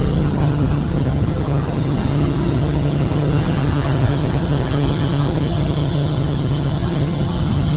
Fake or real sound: fake